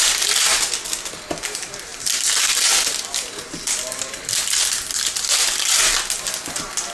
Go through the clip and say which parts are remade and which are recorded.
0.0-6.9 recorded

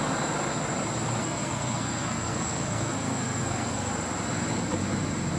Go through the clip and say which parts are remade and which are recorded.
0.0-1.2 recorded; 1.2-3.9 remade; 3.9-5.4 recorded

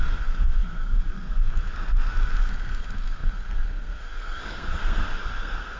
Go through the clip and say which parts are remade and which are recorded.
0.0-5.8 remade

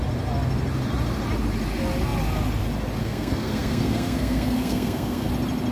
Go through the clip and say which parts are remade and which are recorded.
0.0-3.0 recorded; 3.0-5.3 remade; 5.3-5.7 recorded

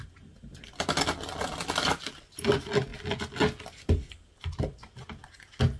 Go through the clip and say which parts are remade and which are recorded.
0.0-5.8 recorded

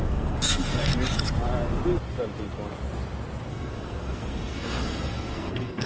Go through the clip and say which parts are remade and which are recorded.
0.0-0.9 remade; 0.9-3.5 recorded; 3.5-5.9 remade